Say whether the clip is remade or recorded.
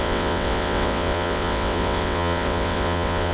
remade